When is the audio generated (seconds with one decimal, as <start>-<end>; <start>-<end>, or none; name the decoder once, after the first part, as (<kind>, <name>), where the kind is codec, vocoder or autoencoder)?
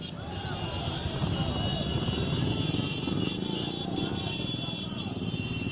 1.2-2.5 (vocoder, BigVGAN v2); 4.1-5.0